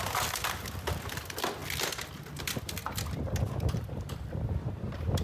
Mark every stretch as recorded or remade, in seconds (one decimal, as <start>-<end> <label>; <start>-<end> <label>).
0.0-1.6 remade; 1.6-2.4 recorded; 2.4-2.8 remade; 2.8-3.9 recorded; 3.9-5.2 remade